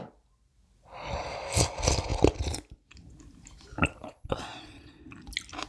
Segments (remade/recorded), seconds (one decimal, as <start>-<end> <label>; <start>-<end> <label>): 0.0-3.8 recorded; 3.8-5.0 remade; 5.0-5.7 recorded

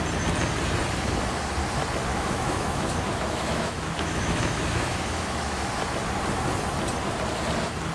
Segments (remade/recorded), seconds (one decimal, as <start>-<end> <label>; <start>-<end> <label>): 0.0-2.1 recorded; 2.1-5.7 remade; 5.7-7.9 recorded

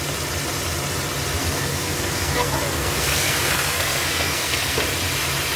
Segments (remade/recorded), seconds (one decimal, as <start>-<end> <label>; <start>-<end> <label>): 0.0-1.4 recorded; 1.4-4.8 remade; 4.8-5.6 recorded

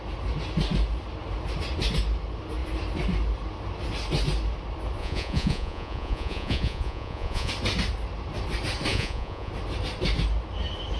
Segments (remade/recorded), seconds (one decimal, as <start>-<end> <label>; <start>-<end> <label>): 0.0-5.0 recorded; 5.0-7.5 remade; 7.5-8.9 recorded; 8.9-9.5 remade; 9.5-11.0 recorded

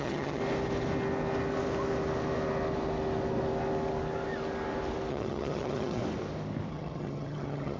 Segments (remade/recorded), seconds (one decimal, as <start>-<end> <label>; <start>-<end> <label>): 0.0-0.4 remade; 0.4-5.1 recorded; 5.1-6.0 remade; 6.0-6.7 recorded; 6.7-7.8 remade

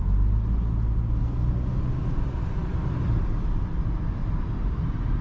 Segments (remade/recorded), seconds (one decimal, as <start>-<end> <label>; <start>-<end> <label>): 0.0-2.6 recorded; 2.6-3.5 remade; 3.5-5.2 recorded